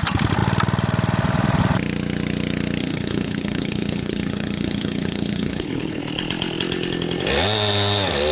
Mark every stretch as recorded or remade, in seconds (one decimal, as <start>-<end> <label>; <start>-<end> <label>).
0.0-2.8 recorded; 2.8-6.0 remade; 6.0-8.3 recorded